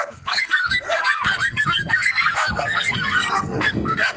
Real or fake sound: fake